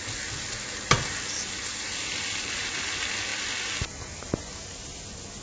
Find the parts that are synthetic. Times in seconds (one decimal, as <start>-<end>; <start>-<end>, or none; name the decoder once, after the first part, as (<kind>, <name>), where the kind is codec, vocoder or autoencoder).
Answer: none